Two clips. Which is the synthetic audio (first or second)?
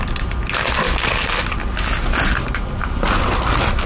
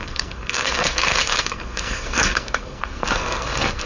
second